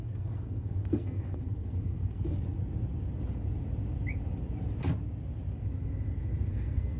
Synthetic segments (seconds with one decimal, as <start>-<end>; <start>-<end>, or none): 0.0-2.3; 6.5-7.0